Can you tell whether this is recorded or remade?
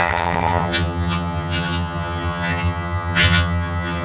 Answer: remade